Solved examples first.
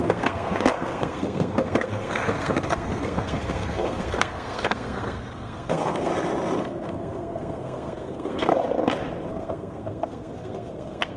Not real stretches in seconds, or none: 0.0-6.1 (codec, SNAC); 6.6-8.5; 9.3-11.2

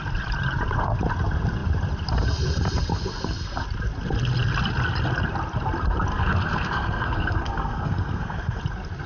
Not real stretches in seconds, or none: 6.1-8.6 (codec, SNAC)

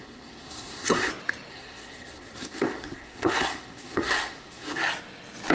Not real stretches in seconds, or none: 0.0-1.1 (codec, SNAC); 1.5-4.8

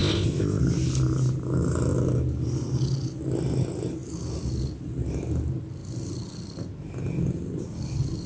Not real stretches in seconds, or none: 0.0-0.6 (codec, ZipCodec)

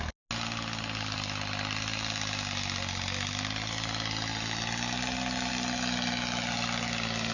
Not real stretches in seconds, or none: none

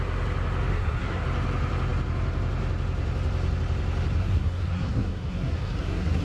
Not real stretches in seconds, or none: 0.7-1.2 (codec, SNAC); 4.2-6.2

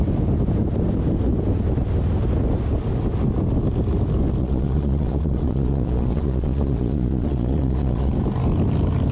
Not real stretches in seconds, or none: 4.4-8.1 (vocoder, Vocos)

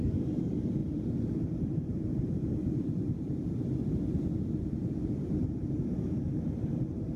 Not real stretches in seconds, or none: 0.0-0.8 (vocoder, BigVGAN v2); 1.9-7.2